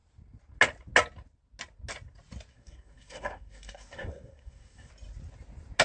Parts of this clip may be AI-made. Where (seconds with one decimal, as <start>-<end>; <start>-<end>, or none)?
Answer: 2.5-4.9